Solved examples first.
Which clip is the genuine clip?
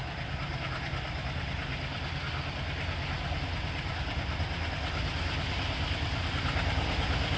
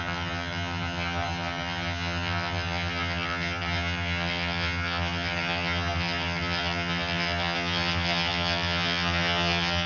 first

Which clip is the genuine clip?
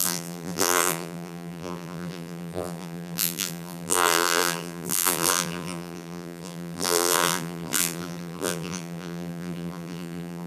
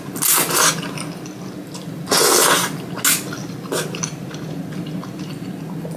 second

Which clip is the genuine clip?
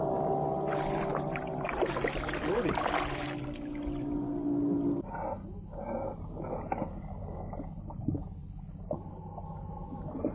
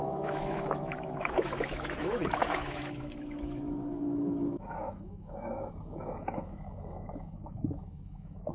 first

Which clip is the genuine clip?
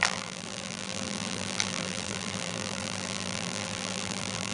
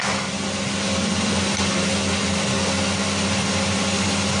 second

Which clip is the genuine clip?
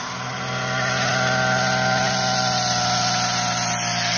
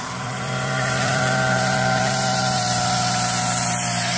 first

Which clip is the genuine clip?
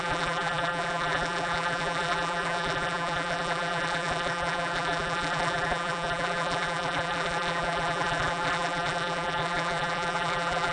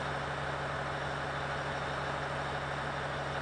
second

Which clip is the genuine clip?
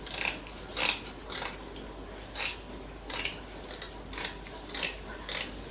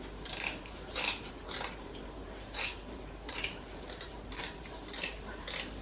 first